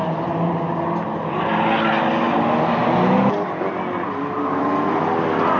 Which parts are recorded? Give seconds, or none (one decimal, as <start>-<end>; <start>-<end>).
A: 0.0-5.6